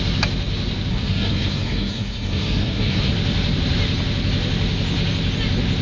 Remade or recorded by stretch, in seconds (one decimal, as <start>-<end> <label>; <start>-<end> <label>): 0.0-0.9 recorded; 0.9-3.1 remade; 3.1-5.8 recorded